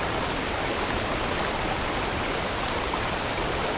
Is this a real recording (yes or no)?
yes